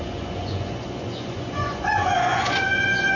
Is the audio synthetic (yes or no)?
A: yes